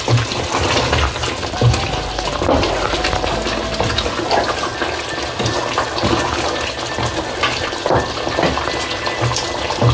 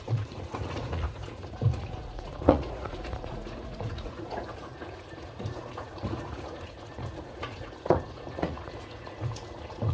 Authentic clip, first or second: first